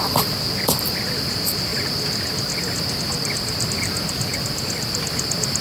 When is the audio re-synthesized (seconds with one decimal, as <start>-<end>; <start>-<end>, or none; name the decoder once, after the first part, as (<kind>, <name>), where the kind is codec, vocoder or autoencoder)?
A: none